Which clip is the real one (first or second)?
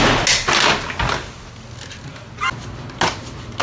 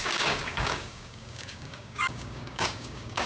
first